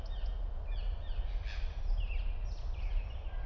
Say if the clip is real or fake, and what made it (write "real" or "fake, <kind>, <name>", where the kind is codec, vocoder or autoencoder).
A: real